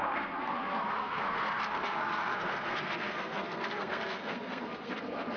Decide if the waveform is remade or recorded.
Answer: remade